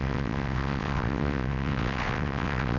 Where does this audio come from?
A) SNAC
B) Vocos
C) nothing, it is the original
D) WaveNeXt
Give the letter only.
D